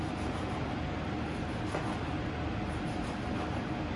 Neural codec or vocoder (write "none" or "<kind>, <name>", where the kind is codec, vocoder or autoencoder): none